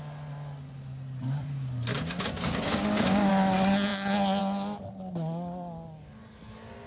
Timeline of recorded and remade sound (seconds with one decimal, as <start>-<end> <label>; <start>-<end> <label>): 0.0-1.9 recorded; 1.9-3.3 remade; 3.3-6.9 recorded